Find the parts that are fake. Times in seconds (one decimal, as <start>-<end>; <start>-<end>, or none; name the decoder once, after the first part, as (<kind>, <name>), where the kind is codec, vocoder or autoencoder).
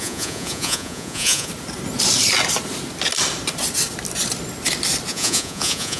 0.0-1.5 (vocoder, Vocos); 5.1-6.0